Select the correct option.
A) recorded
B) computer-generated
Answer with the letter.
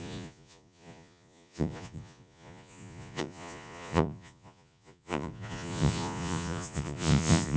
B